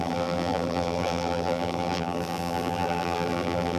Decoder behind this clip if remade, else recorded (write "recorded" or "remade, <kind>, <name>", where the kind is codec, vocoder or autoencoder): remade, vocoder, BigVGAN v2